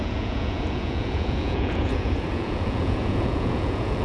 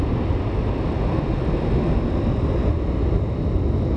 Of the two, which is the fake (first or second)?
first